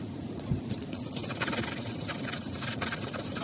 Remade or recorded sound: remade